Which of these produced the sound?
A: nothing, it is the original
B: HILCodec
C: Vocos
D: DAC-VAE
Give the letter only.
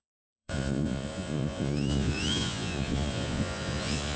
C